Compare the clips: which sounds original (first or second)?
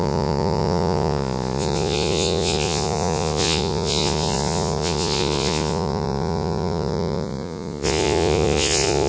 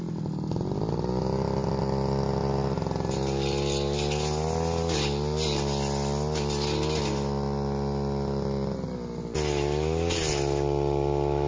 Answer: second